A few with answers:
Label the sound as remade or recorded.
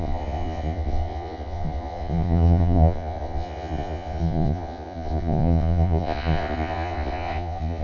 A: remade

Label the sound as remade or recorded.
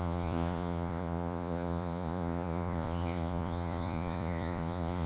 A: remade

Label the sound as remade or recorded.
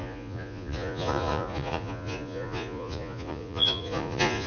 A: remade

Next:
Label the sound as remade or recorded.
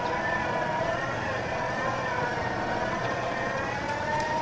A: remade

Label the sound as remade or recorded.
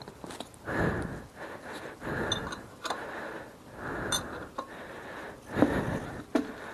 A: recorded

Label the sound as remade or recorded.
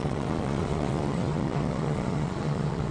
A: remade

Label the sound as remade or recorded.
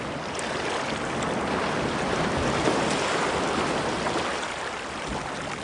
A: recorded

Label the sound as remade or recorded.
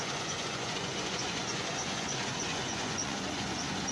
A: remade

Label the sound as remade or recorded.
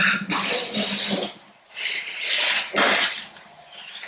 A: recorded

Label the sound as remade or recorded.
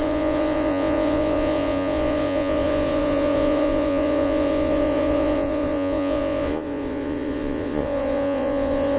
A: remade